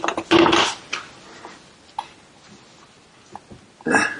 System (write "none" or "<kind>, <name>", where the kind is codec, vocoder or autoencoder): none